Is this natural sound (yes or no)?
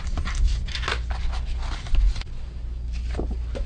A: yes